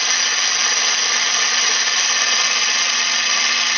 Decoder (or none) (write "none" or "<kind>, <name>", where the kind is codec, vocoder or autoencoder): none